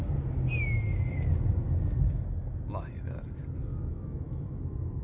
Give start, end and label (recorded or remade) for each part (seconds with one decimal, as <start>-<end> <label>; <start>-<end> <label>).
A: 0.0-3.7 recorded; 3.7-5.0 remade